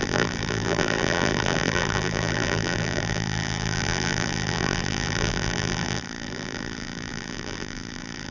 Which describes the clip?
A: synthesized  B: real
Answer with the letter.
A